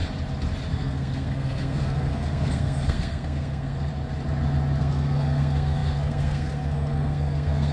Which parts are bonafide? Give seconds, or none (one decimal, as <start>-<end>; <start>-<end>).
0.0-0.7; 3.9-4.8